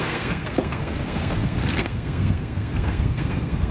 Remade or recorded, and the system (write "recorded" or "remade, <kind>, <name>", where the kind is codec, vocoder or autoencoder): remade, codec, SNAC